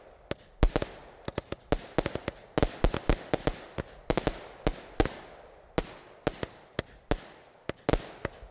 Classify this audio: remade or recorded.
recorded